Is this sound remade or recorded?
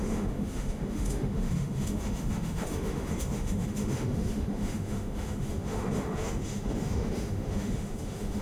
remade